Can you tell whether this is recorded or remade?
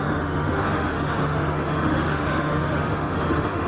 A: remade